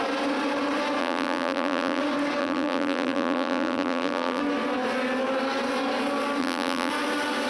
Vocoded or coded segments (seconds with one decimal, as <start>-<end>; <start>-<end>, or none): 1.0-2.0; 2.4-4.4; 6.4-6.9